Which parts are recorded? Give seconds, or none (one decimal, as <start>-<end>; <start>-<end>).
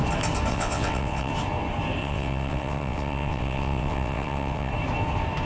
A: 0.0-0.5; 1.3-2.0; 4.7-5.5